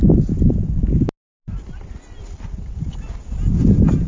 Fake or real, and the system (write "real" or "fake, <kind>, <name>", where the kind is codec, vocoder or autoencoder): real